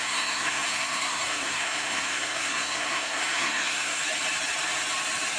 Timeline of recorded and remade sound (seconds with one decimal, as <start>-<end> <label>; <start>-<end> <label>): 0.0-4.0 remade; 4.0-5.4 recorded